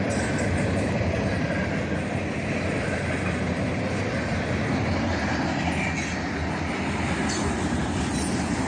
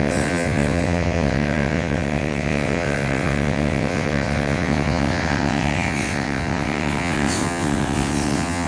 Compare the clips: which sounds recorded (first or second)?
first